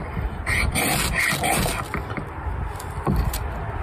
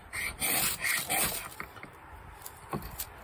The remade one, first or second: second